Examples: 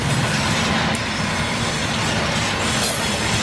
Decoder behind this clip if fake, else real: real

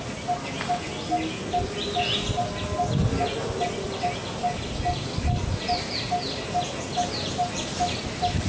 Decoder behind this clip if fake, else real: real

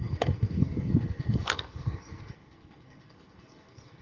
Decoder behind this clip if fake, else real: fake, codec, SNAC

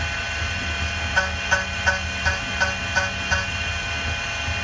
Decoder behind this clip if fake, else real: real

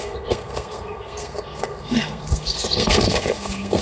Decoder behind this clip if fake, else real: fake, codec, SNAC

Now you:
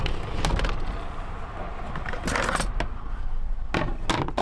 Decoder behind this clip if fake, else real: real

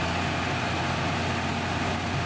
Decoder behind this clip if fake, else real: real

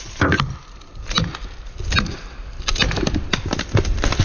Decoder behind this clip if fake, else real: real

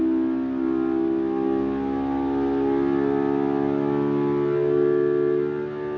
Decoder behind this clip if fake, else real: real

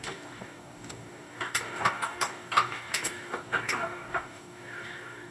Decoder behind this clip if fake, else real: fake, codec, DAC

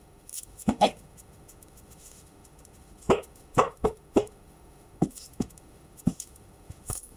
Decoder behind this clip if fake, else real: fake, autoencoder, DAC-VAE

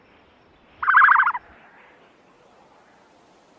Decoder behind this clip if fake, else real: real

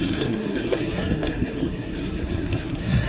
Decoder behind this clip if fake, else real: fake, codec, SNAC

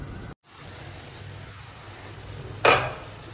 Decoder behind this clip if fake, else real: real